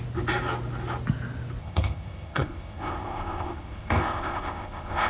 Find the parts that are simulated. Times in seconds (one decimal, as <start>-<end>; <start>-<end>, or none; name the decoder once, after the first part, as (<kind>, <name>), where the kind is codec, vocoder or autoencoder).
1.6-5.1 (codec, ZipCodec)